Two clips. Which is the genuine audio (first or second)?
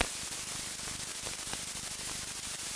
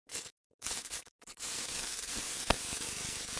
first